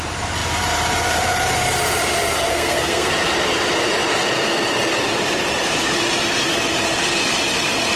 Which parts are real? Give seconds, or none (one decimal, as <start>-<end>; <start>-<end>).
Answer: 0.0-2.5; 3.1-8.0